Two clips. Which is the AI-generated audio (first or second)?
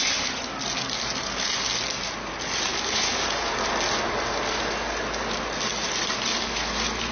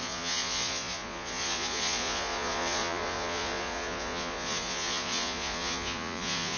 second